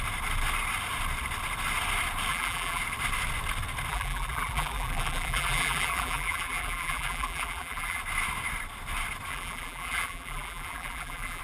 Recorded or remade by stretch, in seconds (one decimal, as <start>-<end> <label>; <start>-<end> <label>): 0.0-2.3 recorded; 2.3-2.8 remade; 2.8-3.9 recorded; 3.9-8.0 remade; 8.0-9.3 recorded; 9.3-11.4 remade